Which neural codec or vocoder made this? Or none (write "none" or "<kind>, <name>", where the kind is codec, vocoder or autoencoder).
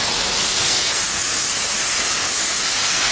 codec, SNAC